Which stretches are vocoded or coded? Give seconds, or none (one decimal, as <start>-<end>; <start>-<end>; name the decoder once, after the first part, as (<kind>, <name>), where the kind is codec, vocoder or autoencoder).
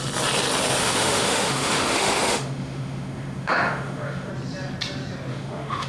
0.8-4.3 (autoencoder, DAC-VAE); 5.3-5.9